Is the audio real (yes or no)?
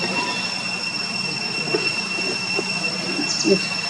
yes